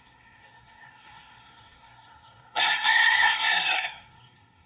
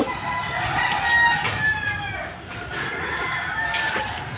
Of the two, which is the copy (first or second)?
first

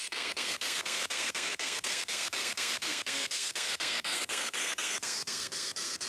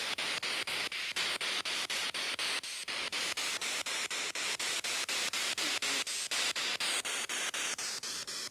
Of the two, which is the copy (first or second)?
first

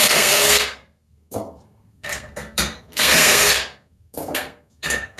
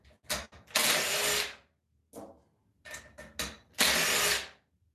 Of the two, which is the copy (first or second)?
first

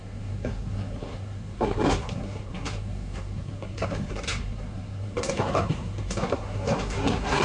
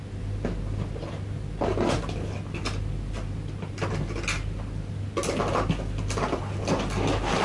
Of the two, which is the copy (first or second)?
first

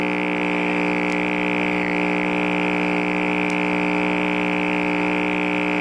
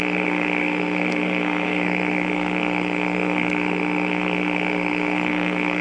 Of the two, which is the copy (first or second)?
second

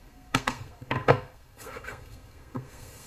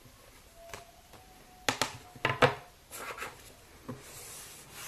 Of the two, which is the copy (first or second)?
first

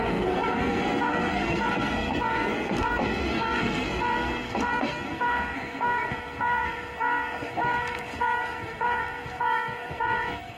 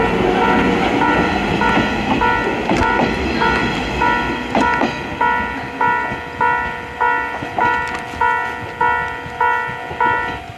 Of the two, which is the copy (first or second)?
first